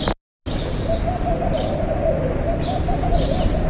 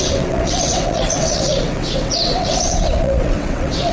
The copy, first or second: second